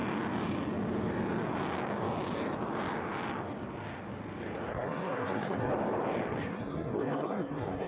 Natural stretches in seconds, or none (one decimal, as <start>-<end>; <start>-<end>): 0.0-4.7; 5.7-6.4